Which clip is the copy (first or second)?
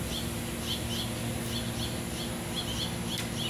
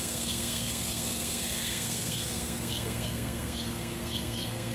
second